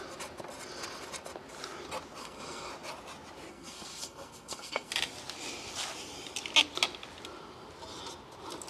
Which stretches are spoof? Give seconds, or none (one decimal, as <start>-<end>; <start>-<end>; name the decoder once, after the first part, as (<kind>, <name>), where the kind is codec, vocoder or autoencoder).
2.2-2.7 (codec, SNAC); 3.5-4.9